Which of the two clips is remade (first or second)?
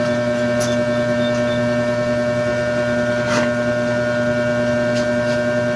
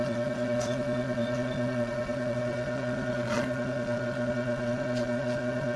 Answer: second